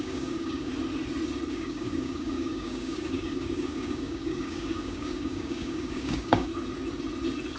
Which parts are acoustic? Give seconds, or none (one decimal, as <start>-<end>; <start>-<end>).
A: 0.7-1.5; 6.5-7.6

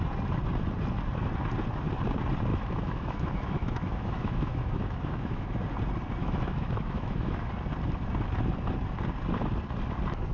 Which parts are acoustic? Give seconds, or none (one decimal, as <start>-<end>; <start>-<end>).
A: 0.0-2.5; 5.6-6.2; 7.5-10.3